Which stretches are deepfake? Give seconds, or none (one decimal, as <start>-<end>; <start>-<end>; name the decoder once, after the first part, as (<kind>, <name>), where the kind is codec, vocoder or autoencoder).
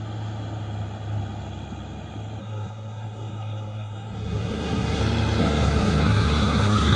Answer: 2.4-5.0 (codec, SNAC); 5.4-7.0